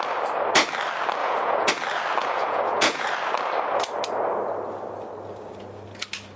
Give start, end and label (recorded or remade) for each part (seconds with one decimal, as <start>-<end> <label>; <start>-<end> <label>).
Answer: 0.0-1.2 recorded; 1.2-1.7 remade; 1.7-2.2 recorded; 2.2-3.1 remade; 3.1-6.4 recorded